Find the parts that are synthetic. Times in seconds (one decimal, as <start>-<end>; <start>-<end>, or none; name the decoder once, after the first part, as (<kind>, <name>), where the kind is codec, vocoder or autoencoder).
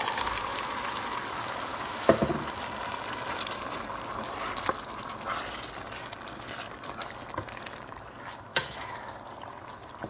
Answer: 1.7-2.3 (autoencoder, DAC-VAE); 8.5-9.1